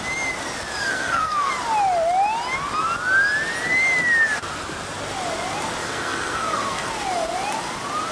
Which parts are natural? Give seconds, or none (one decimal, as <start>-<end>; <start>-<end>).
0.0-0.8; 1.5-5.8; 6.9-8.1